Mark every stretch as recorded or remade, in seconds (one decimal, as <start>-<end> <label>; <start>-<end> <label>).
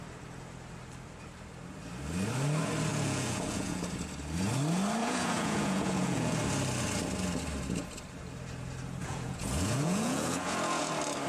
0.0-2.9 recorded; 2.9-3.8 remade; 3.8-5.0 recorded; 5.0-6.4 remade; 6.4-9.0 recorded; 9.0-10.9 remade; 10.9-11.3 recorded